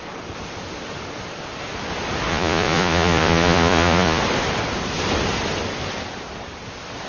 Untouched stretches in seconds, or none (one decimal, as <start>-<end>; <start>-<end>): 0.0-2.3; 4.2-7.1